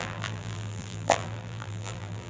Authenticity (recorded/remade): remade